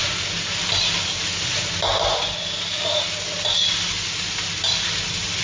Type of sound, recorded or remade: recorded